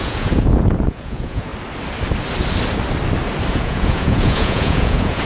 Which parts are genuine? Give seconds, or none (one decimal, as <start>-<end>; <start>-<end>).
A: 1.5-3.5